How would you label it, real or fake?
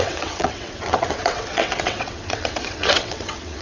fake